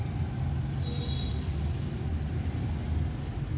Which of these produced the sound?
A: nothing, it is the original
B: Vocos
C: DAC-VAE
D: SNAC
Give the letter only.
A